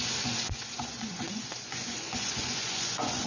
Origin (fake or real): fake